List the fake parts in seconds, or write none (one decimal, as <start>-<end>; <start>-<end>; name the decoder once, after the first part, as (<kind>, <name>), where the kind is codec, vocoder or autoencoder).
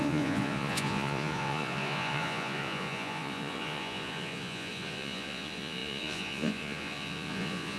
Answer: 0.0-7.8 (vocoder, Vocos)